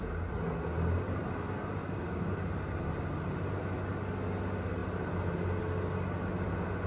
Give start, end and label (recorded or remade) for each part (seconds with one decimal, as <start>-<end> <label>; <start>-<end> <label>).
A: 0.0-1.8 recorded; 1.8-2.3 remade; 2.3-6.9 recorded